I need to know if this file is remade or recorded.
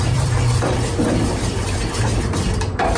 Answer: remade